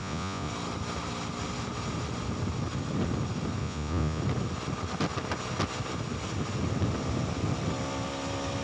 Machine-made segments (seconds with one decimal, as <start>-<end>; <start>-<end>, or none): 0.0-0.5; 3.6-4.2